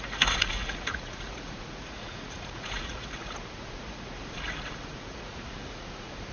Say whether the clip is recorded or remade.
remade